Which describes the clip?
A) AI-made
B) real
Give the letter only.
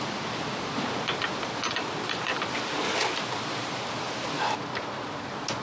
B